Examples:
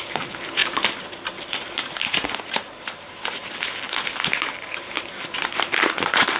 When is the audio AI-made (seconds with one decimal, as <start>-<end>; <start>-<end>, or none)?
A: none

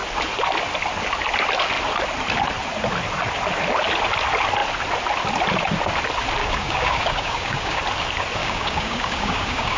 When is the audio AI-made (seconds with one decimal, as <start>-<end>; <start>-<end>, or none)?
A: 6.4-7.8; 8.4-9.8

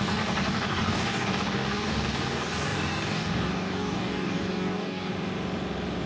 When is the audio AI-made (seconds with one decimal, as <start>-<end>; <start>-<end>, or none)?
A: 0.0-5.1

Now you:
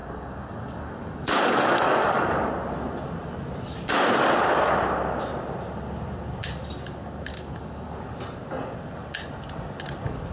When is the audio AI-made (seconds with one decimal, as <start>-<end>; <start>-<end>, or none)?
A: 0.0-2.5; 7.3-7.9